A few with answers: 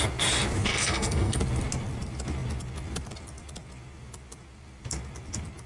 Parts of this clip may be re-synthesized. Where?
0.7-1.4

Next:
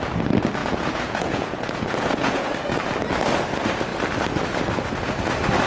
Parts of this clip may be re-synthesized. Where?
0.6-2.5

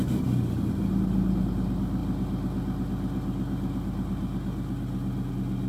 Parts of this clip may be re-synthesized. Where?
none

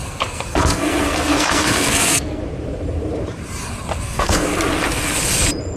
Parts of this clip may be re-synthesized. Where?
0.0-2.4; 4.0-4.5

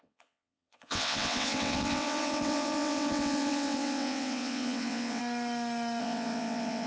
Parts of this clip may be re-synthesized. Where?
0.0-5.2; 6.0-6.9

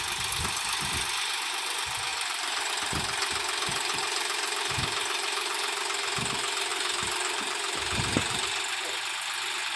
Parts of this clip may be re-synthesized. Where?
2.1-2.7; 3.7-5.8; 6.7-7.5

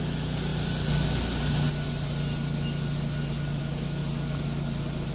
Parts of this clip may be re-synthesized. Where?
none

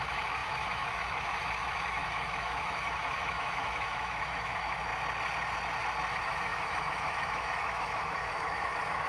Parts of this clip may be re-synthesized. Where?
0.0-4.9; 6.1-9.1